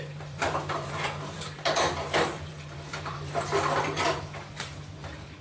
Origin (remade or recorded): remade